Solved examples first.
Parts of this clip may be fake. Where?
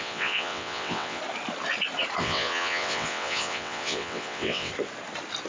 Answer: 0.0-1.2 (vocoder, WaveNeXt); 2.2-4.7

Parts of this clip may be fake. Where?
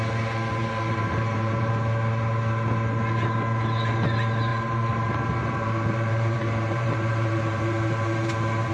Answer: 0.6-1.7 (vocoder, BigVGAN v2); 4.5-8.7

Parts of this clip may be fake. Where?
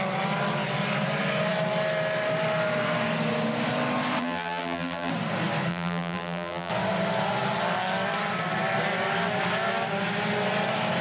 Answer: 4.2-5.1 (vocoder, BigVGAN v2); 5.7-6.7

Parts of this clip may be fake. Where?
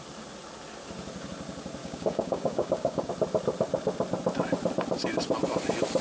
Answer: 1.8-3.1 (codec, DAC)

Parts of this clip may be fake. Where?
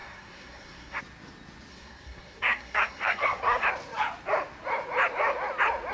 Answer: 0.0-1.0 (codec, SNAC); 1.7-3.7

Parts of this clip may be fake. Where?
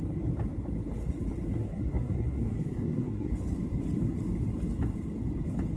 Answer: 1.6-3.3 (codec, SNAC)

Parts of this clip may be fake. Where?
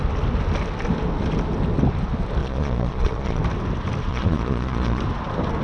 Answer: 2.4-3.4 (vocoder, Vocos); 4.1-5.0